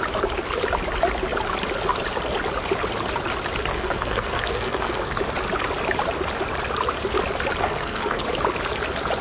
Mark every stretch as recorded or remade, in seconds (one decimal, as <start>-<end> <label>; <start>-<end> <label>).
0.0-3.7 recorded; 3.7-5.2 remade; 5.2-7.6 recorded; 7.6-8.2 remade; 8.2-9.2 recorded